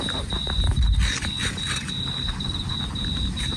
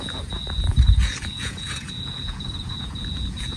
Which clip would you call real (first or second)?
first